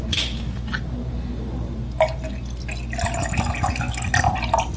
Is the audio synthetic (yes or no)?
no